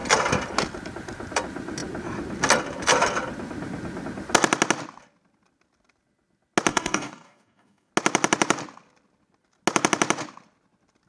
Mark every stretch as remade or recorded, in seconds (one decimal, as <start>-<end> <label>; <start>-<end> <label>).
0.0-6.7 recorded; 6.7-7.9 remade; 7.9-11.1 recorded